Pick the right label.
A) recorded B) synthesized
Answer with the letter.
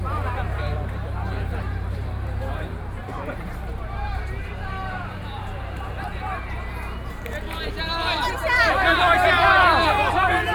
B